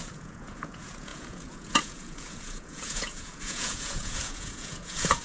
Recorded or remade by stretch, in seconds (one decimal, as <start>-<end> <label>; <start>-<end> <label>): 0.0-5.2 remade

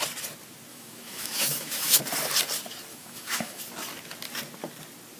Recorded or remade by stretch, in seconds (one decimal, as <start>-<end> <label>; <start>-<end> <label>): 0.0-0.7 recorded; 0.7-2.0 remade; 2.0-2.9 recorded; 2.9-3.6 remade; 3.6-5.2 recorded

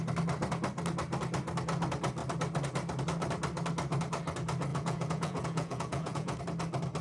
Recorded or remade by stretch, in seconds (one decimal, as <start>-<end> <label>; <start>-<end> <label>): 0.0-4.7 recorded; 4.7-6.4 remade; 6.4-7.0 recorded

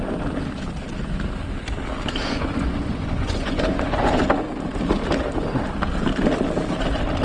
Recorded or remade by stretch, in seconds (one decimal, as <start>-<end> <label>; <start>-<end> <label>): 0.0-2.2 recorded; 2.2-4.2 remade; 4.2-7.2 recorded